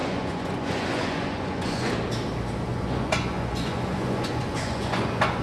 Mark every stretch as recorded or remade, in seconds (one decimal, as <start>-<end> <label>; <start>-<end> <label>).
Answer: 0.0-1.9 remade; 1.9-2.7 recorded; 2.7-5.4 remade